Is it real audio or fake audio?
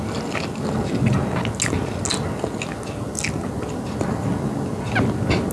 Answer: real